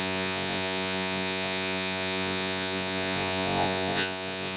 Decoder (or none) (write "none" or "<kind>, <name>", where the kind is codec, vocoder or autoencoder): vocoder, Vocos